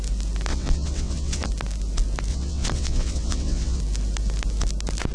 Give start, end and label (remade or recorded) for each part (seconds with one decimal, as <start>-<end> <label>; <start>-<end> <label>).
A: 0.0-0.5 recorded; 0.5-1.5 remade; 1.5-2.3 recorded; 2.3-3.8 remade; 3.8-5.1 recorded